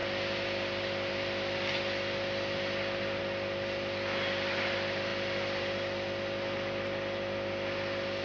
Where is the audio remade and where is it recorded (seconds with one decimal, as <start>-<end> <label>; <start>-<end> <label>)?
0.0-8.2 recorded